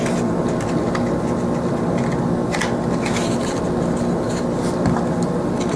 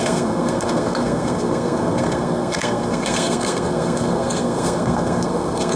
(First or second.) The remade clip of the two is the second